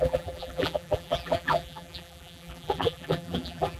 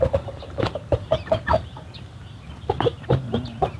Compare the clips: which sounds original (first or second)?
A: second